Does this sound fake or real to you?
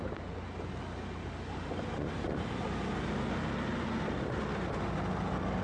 real